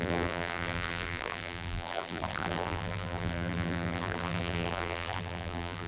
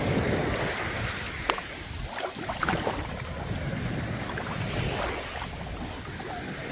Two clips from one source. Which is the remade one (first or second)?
first